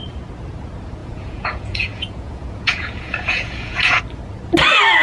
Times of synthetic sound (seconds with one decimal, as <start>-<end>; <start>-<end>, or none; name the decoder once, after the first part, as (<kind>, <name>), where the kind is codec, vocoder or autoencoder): 1.0-4.0 (vocoder, Vocos)